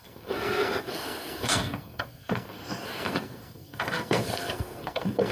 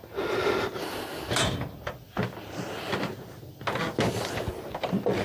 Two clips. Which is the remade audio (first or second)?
first